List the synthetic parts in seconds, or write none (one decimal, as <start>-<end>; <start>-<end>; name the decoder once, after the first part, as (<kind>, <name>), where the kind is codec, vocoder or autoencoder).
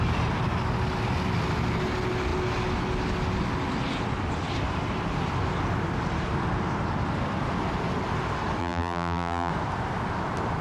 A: 8.6-9.5 (vocoder, BigVGAN v2)